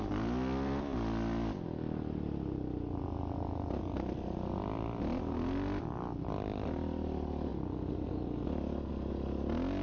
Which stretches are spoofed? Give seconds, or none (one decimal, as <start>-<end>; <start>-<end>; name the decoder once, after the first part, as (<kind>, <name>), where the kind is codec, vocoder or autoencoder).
none